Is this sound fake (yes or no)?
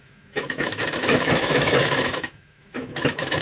yes